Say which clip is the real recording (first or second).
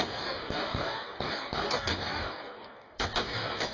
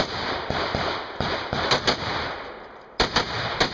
second